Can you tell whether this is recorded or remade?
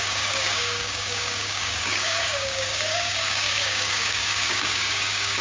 remade